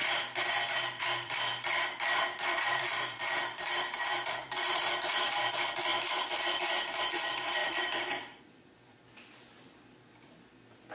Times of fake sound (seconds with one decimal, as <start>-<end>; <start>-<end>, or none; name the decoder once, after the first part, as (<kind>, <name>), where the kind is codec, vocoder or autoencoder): 1.0-10.9 (vocoder, BigVGAN v2)